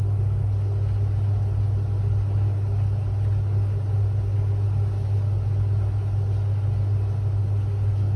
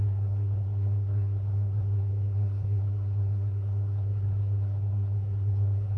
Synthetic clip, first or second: second